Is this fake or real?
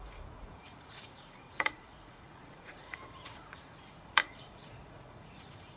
fake